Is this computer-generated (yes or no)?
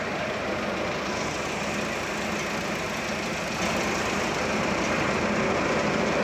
no